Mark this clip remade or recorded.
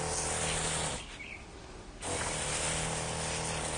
recorded